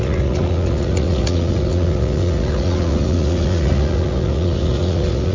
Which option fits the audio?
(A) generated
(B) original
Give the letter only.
A